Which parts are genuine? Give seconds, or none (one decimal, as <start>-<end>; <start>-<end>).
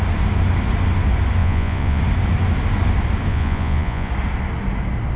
0.0-1.4; 2.0-3.3; 4.1-5.2